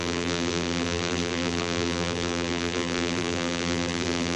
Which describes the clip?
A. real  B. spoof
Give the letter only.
B